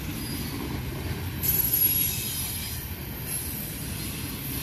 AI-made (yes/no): no